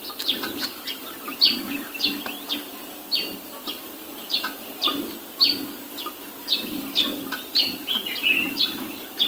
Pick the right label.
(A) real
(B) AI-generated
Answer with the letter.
A